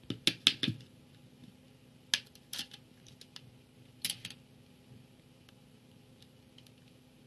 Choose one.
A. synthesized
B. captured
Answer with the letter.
B